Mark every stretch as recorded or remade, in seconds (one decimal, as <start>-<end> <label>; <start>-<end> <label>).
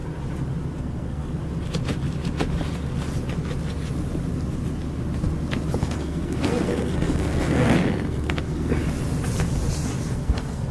0.0-0.8 recorded; 0.8-1.4 remade; 1.4-5.8 recorded; 5.8-8.8 remade; 8.8-10.0 recorded; 10.0-10.7 remade